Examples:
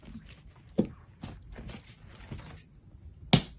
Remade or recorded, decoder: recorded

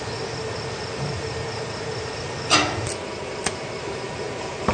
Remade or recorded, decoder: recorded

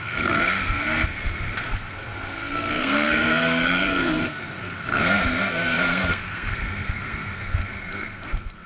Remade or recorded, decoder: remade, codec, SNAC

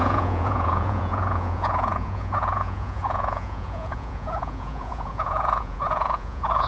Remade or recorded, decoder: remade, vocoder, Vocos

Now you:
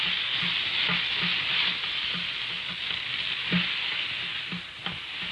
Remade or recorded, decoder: recorded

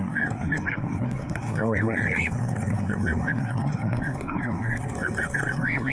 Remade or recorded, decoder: remade, codec, SNAC